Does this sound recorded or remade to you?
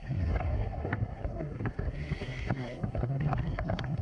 remade